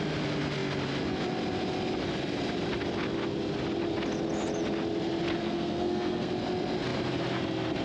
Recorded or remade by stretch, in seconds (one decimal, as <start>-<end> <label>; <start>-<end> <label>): 0.0-5.4 recorded; 5.4-6.3 remade; 6.3-7.8 recorded

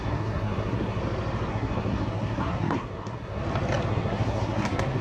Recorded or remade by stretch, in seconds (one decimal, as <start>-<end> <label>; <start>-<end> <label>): 0.0-1.0 remade; 1.0-1.5 recorded; 1.5-3.4 remade; 3.4-3.9 recorded; 3.9-5.0 remade